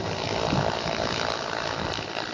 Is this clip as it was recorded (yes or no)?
yes